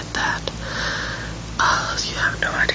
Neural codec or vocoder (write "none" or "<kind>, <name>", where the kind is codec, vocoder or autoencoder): none